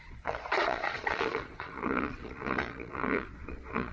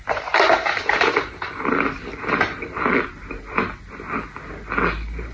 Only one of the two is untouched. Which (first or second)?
second